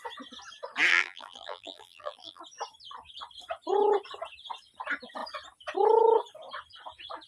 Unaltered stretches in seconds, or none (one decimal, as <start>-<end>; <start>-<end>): 0.0-0.9; 2.4-7.3